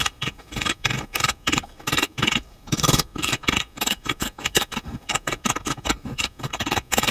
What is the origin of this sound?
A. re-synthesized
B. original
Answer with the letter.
A